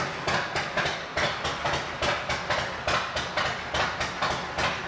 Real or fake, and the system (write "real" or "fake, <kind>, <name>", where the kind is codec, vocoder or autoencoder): real